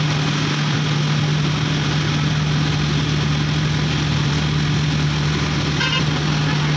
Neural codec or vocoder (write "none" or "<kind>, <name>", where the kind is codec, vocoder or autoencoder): none